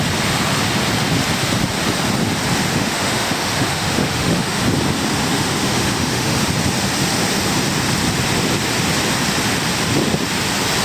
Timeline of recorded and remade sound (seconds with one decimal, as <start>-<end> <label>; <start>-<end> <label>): 0.0-2.7 recorded; 2.7-4.6 remade; 4.6-5.3 recorded; 5.3-6.4 remade; 6.4-10.8 recorded